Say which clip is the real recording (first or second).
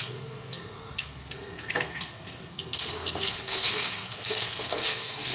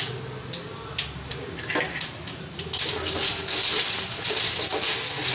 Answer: second